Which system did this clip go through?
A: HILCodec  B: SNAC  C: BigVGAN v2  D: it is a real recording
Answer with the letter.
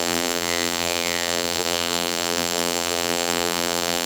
C